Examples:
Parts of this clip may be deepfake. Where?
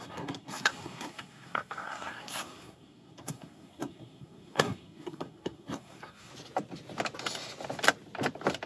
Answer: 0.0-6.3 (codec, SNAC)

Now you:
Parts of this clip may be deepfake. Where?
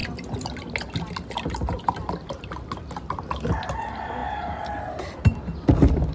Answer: none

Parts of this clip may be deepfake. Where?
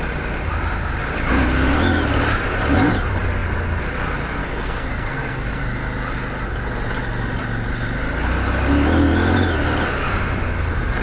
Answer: 4.4-5.6 (codec, SNAC)